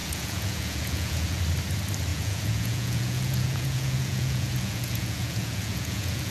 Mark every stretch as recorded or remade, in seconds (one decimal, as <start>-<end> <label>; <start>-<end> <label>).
0.0-1.4 remade; 1.4-2.1 recorded; 2.1-6.3 remade